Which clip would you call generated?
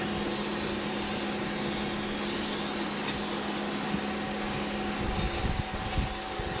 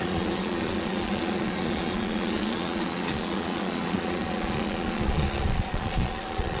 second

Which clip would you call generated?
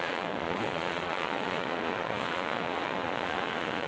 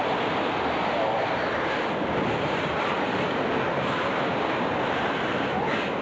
first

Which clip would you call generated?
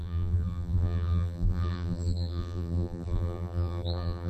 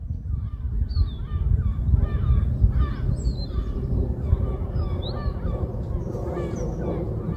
first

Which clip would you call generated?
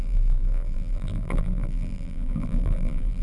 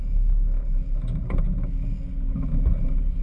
first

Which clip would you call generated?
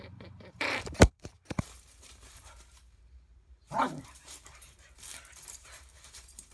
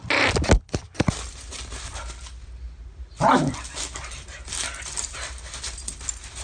first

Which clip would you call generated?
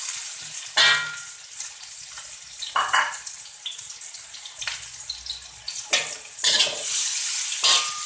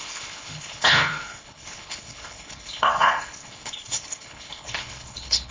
second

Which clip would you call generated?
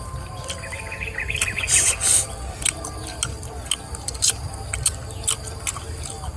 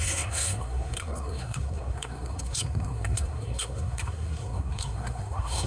second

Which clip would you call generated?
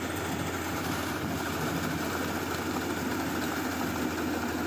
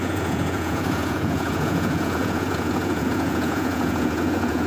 second